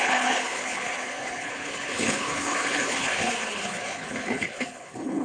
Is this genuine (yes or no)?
no